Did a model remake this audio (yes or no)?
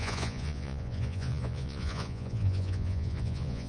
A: yes